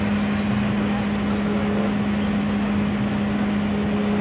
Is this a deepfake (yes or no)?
no